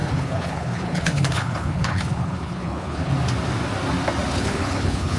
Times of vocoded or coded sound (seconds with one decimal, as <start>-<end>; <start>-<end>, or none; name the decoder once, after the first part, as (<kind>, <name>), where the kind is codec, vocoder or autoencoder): 0.0-3.1 (codec, HILCodec); 4.3-5.2